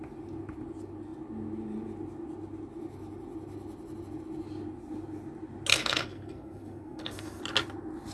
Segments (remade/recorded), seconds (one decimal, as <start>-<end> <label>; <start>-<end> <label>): 0.0-5.7 recorded; 5.7-7.4 remade; 7.4-8.1 recorded